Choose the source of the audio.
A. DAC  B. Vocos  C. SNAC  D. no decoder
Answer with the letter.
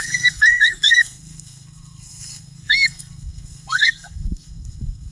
C